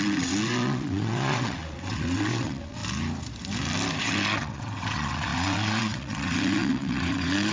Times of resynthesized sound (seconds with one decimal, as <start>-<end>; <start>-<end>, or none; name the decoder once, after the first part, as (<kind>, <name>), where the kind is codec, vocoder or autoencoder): 0.0-2.8 (vocoder, WaveNeXt); 4.0-7.5